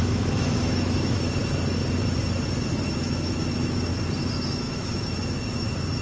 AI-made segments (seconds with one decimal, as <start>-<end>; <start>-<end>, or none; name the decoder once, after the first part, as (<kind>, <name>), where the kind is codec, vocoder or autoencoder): 0.0-1.4 (autoencoder, DAC-VAE); 2.7-3.9; 4.5-6.0